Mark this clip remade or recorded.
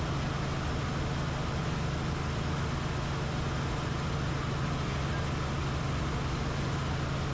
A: recorded